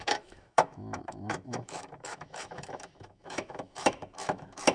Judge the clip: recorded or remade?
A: remade